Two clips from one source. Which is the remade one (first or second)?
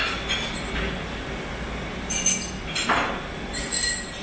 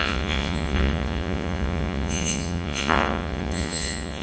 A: second